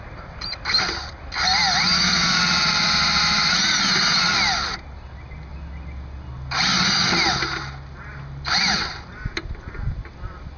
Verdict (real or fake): real